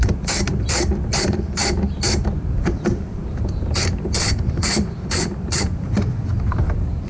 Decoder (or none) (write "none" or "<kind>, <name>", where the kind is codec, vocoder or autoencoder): vocoder, BigVGAN v2